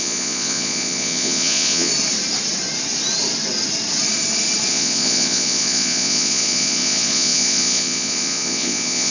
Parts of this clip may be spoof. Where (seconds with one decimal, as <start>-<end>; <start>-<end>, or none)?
0.0-1.9; 4.7-9.1